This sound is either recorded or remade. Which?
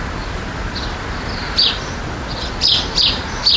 remade